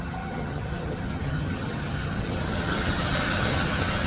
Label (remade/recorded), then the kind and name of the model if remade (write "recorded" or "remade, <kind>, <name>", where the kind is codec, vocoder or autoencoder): remade, vocoder, HiFi-GAN